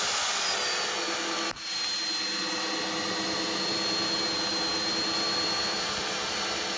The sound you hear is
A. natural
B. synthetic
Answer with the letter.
A